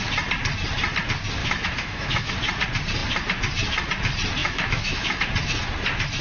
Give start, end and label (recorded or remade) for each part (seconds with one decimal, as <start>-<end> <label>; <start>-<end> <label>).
0.0-1.4 recorded; 1.4-2.3 remade; 2.3-4.4 recorded; 4.4-5.2 remade; 5.2-6.2 recorded